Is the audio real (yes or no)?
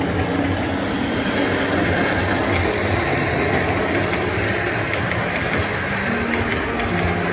yes